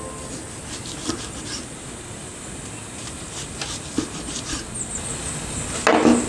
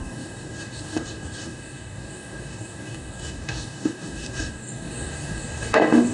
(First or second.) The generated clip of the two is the second